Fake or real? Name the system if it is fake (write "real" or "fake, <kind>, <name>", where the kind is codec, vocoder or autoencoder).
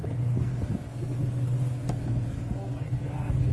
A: fake, codec, SNAC